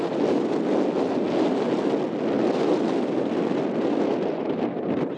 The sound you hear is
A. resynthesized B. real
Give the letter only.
B